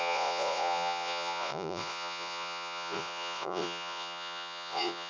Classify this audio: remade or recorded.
remade